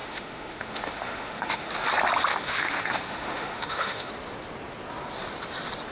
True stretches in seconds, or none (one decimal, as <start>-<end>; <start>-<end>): 1.7-2.3; 4.1-5.9